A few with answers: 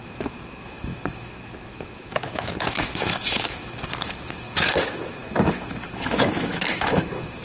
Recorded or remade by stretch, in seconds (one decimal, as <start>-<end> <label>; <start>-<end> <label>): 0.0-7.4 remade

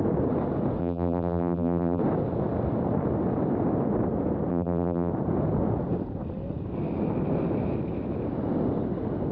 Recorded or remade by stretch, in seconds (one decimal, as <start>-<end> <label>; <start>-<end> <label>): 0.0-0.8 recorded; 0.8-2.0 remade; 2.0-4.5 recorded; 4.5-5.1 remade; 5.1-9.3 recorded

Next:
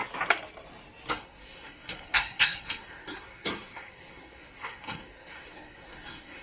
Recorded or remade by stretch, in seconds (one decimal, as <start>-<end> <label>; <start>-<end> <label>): 0.0-1.1 recorded; 1.1-6.4 remade

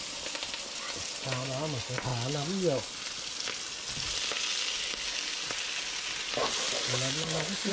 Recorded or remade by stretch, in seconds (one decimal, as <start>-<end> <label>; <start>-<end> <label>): 0.0-7.7 recorded